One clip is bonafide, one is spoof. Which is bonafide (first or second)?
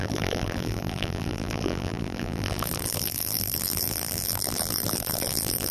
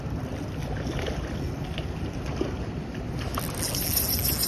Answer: second